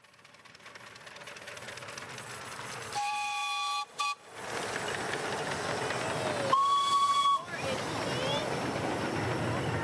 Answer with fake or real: real